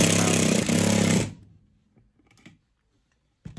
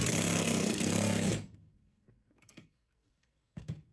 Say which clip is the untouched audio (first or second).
first